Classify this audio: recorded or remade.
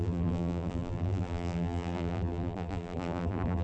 remade